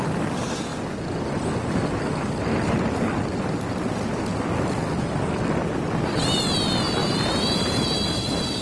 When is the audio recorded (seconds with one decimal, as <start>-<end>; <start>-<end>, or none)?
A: 0.0-7.0